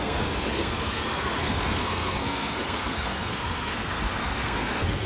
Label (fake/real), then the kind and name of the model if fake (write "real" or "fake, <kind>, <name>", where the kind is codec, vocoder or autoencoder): fake, codec, SNAC